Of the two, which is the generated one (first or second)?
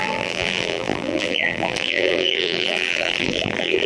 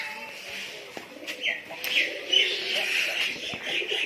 first